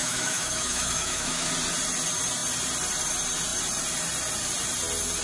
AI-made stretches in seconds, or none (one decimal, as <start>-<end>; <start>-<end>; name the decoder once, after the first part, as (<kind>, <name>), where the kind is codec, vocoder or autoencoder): 0.0-1.5 (autoencoder, DAC-VAE)